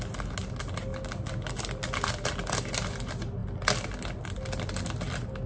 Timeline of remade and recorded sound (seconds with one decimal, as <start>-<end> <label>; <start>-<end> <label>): 0.0-5.5 recorded